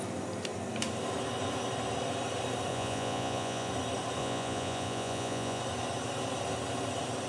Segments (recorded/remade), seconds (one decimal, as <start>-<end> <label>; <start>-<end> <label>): 0.0-2.7 recorded; 2.7-3.7 remade; 3.7-4.2 recorded; 4.2-5.6 remade; 5.6-7.3 recorded